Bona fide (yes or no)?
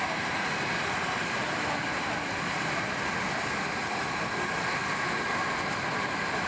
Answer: yes